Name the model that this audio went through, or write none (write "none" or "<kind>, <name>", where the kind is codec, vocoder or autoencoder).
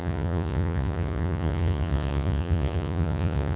vocoder, Vocos